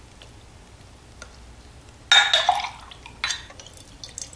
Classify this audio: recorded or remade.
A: recorded